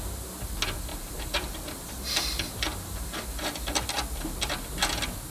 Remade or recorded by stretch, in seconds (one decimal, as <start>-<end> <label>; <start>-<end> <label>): 0.0-0.9 recorded; 0.9-3.8 remade; 3.8-5.3 recorded